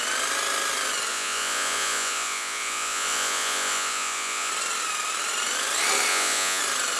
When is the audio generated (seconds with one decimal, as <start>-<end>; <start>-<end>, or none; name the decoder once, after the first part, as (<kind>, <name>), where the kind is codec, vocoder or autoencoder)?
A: 1.1-4.5 (vocoder, Vocos); 6.1-6.6